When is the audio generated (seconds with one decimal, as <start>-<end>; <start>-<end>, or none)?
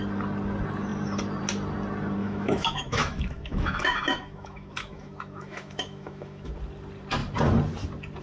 2.2-6.5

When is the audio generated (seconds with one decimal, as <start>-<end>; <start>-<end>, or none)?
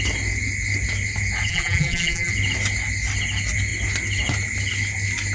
1.5-2.3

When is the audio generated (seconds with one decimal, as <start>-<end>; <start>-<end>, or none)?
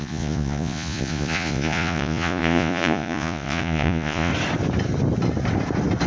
0.0-4.3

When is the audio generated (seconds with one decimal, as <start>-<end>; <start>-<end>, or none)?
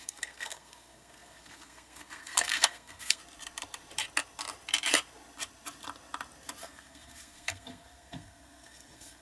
0.0-3.2; 6.6-9.2